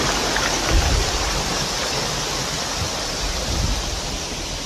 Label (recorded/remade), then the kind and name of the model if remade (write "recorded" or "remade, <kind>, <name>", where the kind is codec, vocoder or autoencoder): recorded